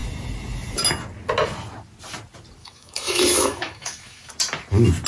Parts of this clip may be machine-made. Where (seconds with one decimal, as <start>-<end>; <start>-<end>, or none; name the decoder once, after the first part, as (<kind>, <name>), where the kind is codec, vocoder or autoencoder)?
2.6-4.3 (autoencoder, DAC-VAE)